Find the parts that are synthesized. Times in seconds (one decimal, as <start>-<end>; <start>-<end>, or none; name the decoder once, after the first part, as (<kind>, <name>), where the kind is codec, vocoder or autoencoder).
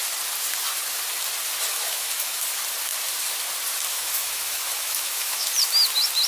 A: 1.7-2.4 (autoencoder, DAC-VAE); 3.9-5.5